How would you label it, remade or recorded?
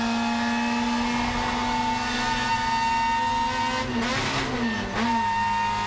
recorded